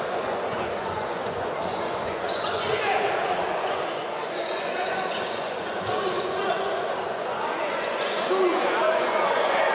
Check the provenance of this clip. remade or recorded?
remade